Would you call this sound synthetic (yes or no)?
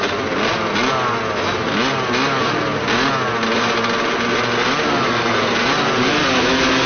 no